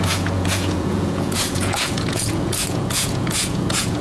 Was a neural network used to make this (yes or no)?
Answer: yes